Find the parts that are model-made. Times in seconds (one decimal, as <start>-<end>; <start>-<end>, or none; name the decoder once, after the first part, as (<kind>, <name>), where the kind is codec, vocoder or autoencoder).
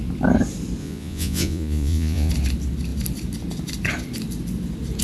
0.8-2.3 (vocoder, Vocos)